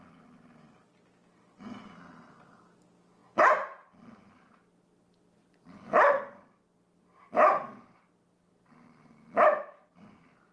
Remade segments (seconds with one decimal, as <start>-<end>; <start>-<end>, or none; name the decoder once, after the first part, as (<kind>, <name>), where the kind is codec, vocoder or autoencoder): none

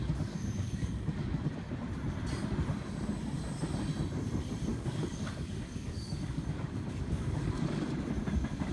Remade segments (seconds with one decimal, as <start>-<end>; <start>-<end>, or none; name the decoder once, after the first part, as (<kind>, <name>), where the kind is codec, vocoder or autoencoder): 0.0-1.7 (codec, DAC); 4.7-7.9

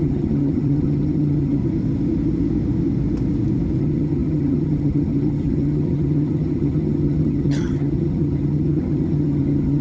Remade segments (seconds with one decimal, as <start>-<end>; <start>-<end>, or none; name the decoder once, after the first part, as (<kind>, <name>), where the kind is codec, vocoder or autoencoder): 0.0-1.6 (vocoder, HiFi-GAN); 3.8-9.8

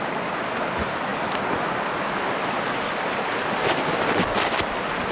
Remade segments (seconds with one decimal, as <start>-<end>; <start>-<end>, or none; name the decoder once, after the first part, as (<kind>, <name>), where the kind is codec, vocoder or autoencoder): none

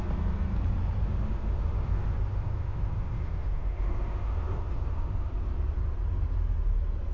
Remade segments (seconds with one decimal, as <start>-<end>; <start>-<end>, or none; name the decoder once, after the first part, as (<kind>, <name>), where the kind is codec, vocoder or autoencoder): 1.0-5.3 (autoencoder, DAC-VAE)

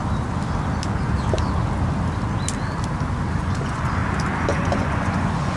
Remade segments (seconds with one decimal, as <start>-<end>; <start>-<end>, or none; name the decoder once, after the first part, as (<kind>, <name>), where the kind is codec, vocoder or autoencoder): 3.4-4.0 (vocoder, Vocos); 4.5-5.6

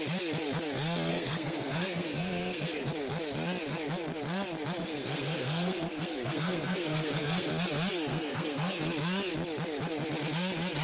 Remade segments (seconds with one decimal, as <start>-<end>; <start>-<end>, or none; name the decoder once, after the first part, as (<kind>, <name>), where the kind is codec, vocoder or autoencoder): 1.1-2.9 (codec, SNAC); 4.8-7.5; 8.1-8.8